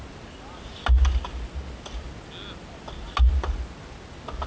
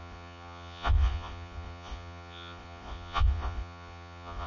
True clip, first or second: first